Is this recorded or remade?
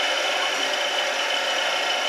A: recorded